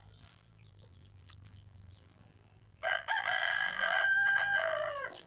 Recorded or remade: remade